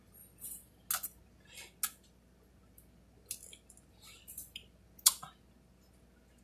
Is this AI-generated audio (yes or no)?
no